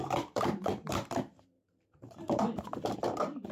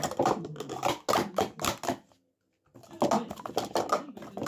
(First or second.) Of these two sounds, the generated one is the first